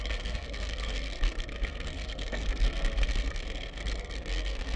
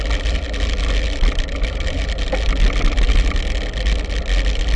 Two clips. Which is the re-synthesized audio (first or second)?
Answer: first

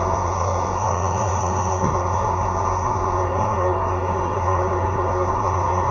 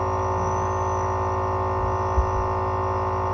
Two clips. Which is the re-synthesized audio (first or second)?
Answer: first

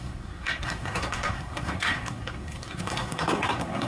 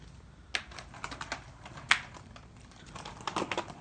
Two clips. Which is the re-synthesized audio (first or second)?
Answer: first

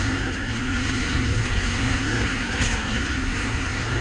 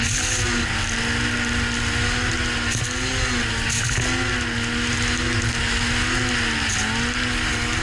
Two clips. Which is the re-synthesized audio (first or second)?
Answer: first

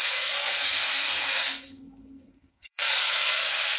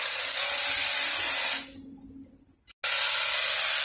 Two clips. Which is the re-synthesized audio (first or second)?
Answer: first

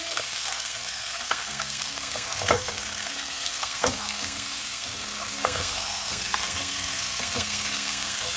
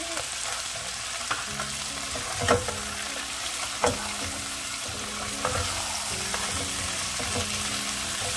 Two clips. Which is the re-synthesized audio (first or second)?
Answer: first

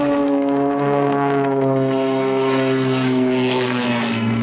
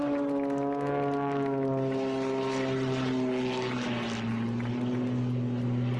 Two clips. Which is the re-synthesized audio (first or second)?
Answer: first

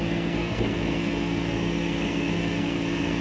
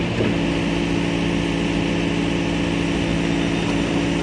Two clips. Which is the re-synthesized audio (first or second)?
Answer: first